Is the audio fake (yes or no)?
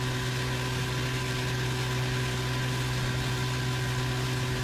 no